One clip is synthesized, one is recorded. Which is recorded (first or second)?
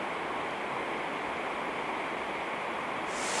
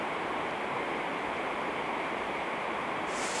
first